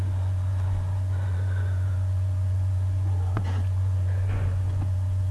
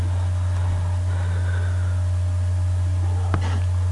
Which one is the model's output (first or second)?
first